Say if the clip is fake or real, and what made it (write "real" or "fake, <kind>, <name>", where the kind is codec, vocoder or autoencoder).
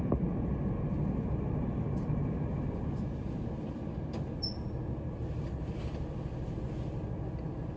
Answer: real